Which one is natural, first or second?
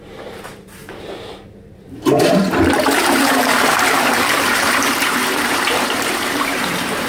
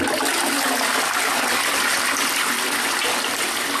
second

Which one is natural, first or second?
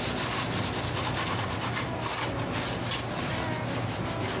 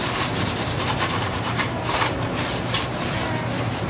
first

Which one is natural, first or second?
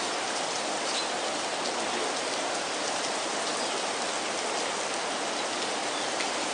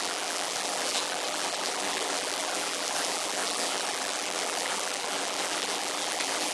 first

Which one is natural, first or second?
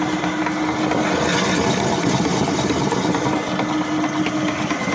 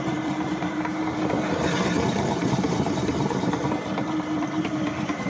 first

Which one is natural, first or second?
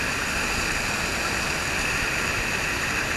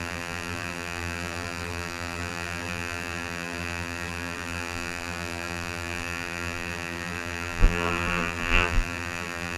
first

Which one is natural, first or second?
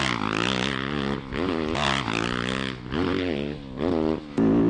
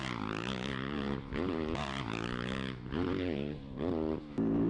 first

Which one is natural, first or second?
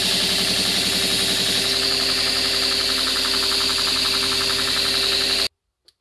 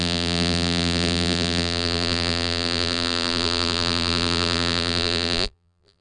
first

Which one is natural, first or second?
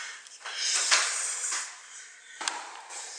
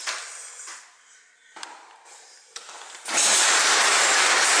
second